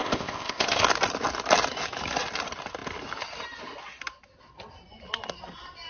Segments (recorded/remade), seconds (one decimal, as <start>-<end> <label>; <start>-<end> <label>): 0.0-0.8 remade; 0.8-5.9 recorded